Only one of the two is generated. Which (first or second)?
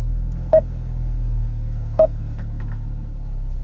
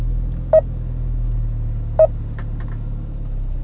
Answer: first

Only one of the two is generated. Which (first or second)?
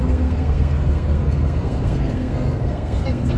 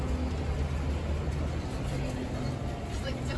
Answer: first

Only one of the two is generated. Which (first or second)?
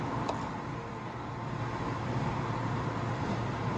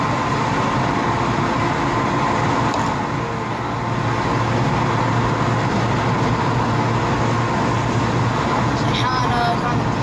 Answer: first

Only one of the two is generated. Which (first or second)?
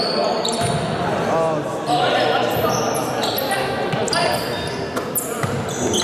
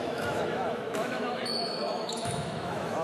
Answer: second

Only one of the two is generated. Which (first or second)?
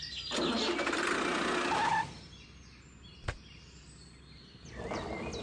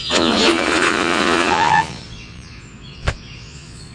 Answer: second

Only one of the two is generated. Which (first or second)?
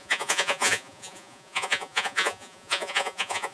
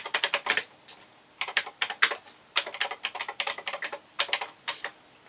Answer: first